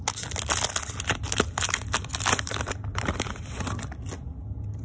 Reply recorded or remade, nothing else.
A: recorded